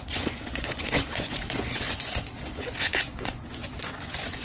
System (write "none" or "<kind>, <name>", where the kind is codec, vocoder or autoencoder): vocoder, Vocos